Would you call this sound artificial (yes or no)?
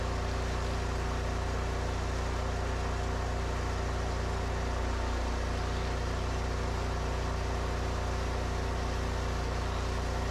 no